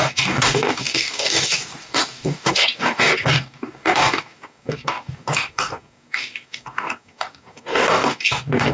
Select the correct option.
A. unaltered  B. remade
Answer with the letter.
B